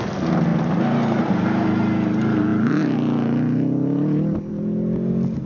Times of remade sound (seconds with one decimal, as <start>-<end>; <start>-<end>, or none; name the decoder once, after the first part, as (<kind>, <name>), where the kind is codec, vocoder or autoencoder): none